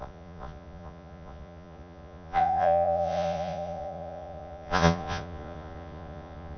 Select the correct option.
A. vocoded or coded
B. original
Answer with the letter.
A